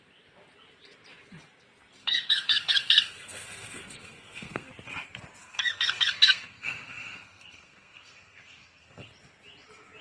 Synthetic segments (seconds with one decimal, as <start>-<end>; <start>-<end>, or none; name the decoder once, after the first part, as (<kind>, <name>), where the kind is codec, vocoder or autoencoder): 2.0-4.7 (codec, SNAC); 5.4-9.1